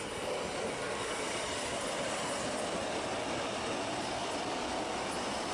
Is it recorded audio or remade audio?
recorded